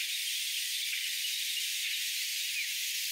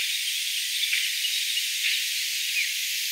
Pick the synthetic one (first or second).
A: first